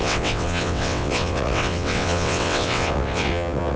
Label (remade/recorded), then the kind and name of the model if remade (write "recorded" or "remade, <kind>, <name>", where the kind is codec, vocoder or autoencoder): remade, vocoder, WaveNeXt